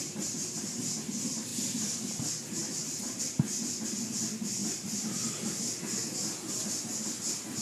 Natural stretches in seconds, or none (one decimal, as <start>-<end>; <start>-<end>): 0.0-1.5; 3.2-4.6; 5.6-7.6